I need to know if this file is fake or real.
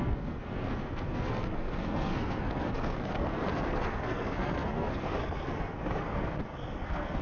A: fake